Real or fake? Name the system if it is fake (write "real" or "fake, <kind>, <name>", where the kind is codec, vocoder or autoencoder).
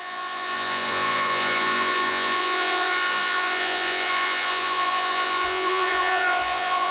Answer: fake, vocoder, Vocos